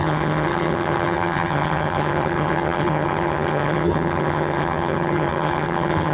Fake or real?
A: fake